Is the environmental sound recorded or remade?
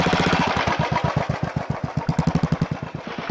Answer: remade